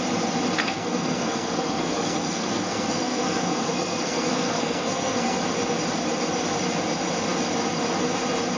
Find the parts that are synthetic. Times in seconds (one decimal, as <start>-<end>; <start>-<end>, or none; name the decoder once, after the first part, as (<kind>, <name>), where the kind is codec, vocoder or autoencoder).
0.6-5.4 (codec, SNAC)